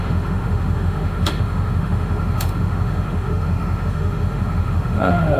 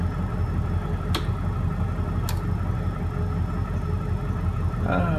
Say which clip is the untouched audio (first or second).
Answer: second